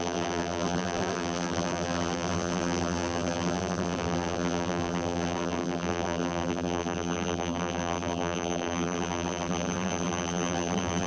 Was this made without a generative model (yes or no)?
no